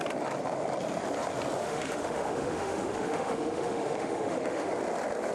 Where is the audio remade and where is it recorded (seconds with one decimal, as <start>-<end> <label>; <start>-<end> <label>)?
0.0-1.6 recorded; 1.6-4.7 remade; 4.7-5.3 recorded